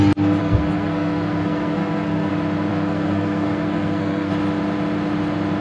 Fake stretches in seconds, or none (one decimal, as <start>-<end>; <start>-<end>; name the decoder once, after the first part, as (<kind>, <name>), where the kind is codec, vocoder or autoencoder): 0.4-2.3 (codec, SNAC); 2.7-4.3